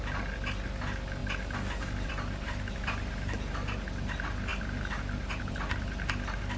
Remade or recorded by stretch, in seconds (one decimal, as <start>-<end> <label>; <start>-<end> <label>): 0.0-6.6 recorded